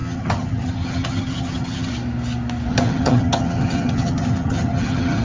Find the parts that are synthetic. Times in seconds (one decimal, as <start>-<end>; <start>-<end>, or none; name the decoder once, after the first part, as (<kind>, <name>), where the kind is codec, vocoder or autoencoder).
0.0-1.9 (vocoder, HiFi-GAN); 2.7-5.2